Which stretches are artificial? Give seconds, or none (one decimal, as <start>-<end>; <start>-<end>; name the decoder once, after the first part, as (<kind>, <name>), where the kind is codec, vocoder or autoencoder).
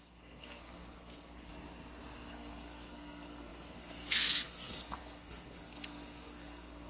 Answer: 0.0-1.5 (codec, SNAC); 2.3-6.9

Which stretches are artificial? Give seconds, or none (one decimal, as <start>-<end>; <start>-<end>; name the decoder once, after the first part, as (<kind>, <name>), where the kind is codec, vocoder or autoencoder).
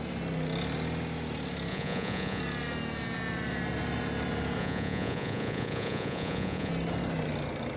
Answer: 1.7-2.4 (vocoder, Vocos); 4.6-6.7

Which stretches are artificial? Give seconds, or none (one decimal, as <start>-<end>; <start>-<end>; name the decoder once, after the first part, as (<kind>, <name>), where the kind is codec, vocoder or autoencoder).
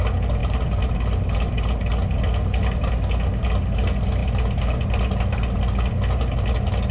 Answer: none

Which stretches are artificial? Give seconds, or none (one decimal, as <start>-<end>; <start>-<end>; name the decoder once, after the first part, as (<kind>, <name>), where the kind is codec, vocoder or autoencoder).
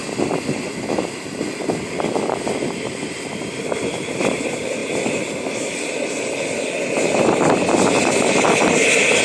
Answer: none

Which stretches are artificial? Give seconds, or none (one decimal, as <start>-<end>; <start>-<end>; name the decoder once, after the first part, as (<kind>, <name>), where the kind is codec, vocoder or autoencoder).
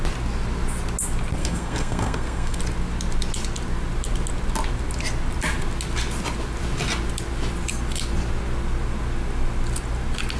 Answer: 1.4-2.6 (codec, SNAC)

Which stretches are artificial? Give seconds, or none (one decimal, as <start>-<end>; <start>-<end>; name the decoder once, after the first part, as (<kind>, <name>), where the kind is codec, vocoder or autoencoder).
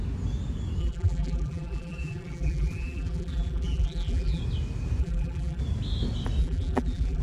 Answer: 0.8-4.4 (vocoder, BigVGAN v2); 5.0-5.6; 6.4-7.2